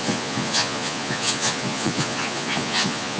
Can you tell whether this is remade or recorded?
remade